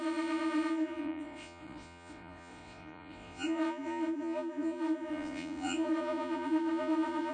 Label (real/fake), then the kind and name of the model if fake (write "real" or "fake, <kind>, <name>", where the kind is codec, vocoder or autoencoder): fake, vocoder, Vocos